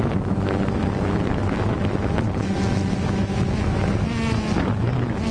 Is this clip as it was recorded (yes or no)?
no